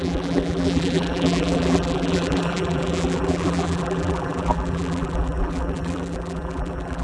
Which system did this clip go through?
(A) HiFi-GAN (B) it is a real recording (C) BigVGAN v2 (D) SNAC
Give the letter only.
C